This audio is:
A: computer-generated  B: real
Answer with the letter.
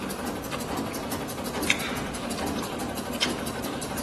B